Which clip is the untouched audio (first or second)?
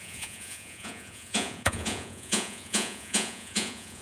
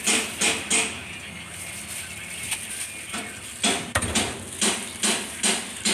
second